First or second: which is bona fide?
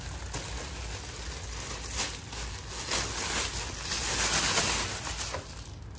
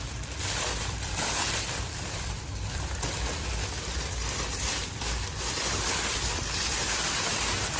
first